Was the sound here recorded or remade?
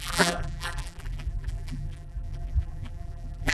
remade